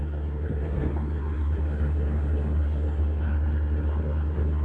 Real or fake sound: fake